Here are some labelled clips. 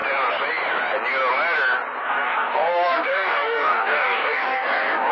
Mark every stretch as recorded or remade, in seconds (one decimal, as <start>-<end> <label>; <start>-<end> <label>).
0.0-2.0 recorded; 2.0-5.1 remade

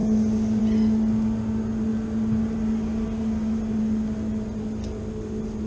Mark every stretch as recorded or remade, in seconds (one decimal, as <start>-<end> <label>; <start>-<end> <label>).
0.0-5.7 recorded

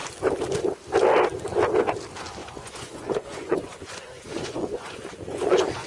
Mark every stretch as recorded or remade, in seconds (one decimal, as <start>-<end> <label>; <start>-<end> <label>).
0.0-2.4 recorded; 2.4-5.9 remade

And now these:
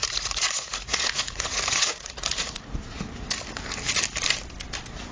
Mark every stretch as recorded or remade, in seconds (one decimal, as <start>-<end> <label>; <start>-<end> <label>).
0.0-2.7 remade; 2.7-5.1 recorded